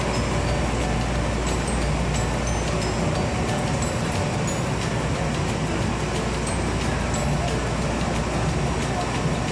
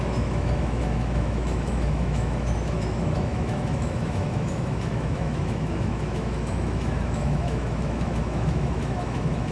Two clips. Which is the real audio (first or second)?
first